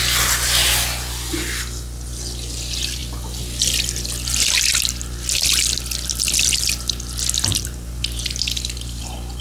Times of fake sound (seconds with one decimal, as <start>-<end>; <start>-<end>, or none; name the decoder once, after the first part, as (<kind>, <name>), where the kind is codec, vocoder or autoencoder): 7.5-9.0 (vocoder, BigVGAN v2)